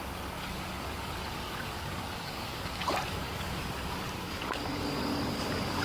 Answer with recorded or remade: remade